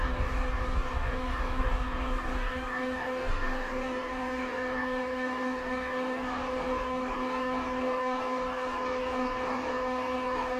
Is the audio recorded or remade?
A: remade